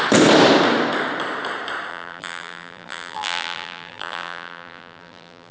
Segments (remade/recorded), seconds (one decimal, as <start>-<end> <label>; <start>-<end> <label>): 0.0-1.9 recorded; 1.9-5.5 remade